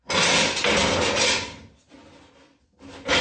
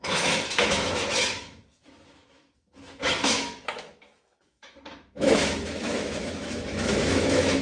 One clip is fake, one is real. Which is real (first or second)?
first